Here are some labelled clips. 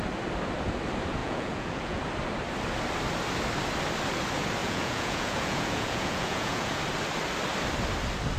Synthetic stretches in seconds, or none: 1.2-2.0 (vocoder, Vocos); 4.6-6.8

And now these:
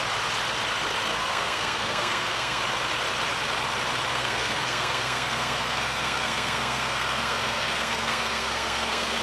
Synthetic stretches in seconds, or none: 1.1-2.6 (codec, SNAC); 4.1-9.2

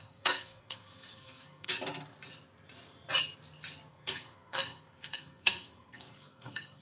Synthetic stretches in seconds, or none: 0.0-1.7 (codec, SNAC); 3.9-6.8

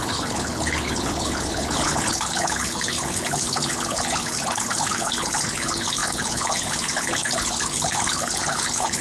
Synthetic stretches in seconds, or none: 0.0-9.0 (codec, HILCodec)

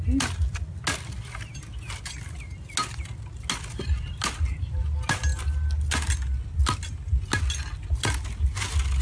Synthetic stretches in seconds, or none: none

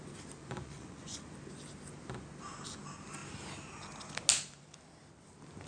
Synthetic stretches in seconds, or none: 0.4-1.2 (vocoder, Vocos)